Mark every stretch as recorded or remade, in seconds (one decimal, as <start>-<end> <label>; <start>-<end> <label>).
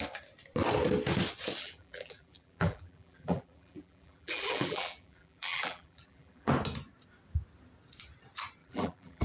0.0-1.6 recorded; 1.6-6.5 remade; 6.5-8.6 recorded; 8.6-9.2 remade